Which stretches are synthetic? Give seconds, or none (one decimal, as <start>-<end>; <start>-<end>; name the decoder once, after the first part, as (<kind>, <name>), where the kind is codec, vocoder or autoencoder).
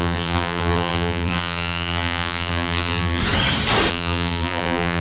0.0-3.2 (vocoder, BigVGAN v2); 3.9-5.0